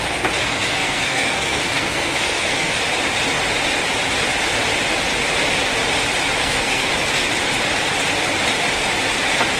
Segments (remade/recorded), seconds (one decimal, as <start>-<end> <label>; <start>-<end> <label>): 0.0-0.4 recorded; 0.4-2.8 remade; 2.8-6.4 recorded; 6.4-6.9 remade; 6.9-9.6 recorded